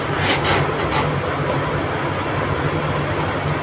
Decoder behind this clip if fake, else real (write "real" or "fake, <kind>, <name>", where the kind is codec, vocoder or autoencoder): real